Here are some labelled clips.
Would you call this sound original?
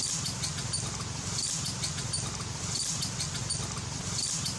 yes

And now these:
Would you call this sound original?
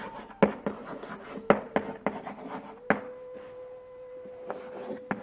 yes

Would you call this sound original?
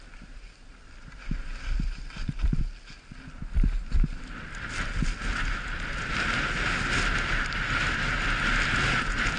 yes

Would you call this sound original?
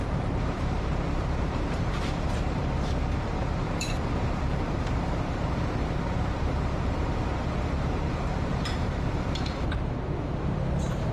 no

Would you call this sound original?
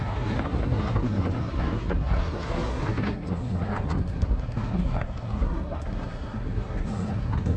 no